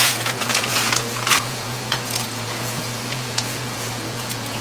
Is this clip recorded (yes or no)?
no